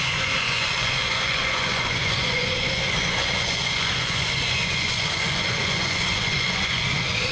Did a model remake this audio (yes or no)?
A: yes